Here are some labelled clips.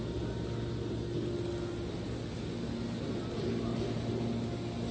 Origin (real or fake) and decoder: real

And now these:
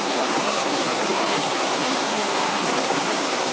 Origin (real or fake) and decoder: fake, codec, SNAC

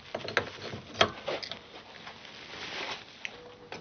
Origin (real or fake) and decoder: real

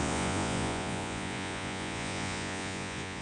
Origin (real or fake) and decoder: fake, vocoder, Vocos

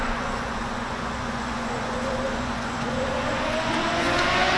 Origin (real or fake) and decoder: fake, vocoder, Vocos